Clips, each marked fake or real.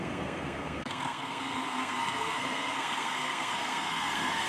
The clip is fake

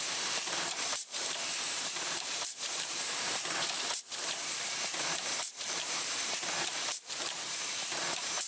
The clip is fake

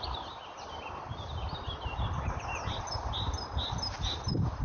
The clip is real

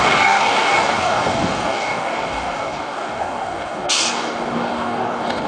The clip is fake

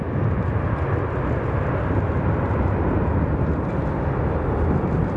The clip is real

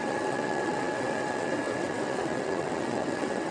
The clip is fake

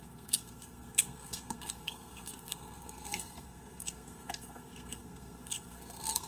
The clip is fake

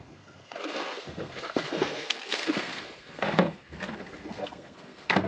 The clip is fake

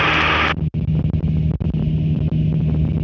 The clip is real